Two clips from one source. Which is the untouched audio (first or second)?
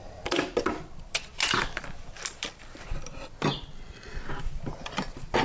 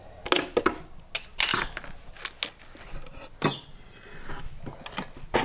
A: second